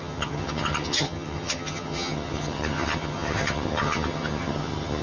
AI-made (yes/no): yes